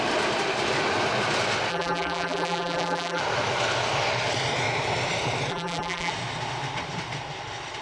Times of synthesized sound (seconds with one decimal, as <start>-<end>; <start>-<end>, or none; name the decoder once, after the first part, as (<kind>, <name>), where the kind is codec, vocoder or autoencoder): 1.7-3.2 (vocoder, BigVGAN v2); 5.5-6.1